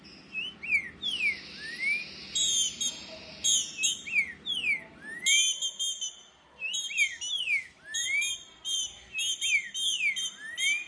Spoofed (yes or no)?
no